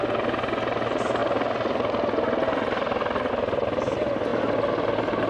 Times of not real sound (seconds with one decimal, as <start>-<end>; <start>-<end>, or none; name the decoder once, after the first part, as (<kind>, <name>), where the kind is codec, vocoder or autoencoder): none